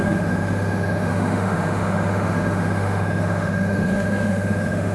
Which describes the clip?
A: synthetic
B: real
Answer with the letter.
A